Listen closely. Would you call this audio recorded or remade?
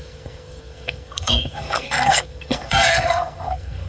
remade